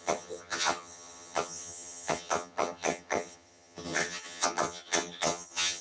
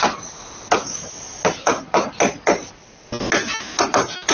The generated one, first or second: first